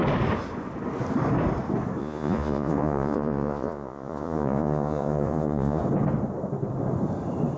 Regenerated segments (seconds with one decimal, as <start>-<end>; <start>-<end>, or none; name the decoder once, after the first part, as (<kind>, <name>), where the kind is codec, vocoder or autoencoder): 2.0-5.8 (vocoder, Vocos)